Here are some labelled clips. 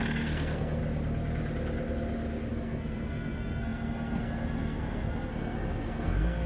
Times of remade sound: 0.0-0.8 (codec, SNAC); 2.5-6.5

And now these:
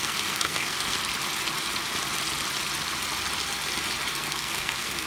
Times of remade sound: 0.0-1.0 (codec, SNAC); 4.1-5.1